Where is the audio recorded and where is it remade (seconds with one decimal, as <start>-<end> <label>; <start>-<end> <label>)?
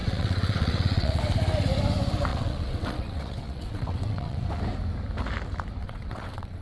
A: 0.0-1.2 remade; 1.2-2.3 recorded; 2.3-4.5 remade; 4.5-5.8 recorded; 5.8-6.6 remade